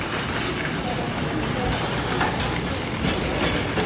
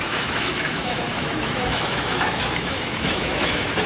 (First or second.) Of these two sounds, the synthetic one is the second